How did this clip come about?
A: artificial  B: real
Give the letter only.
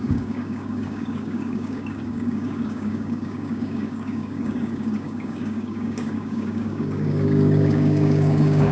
A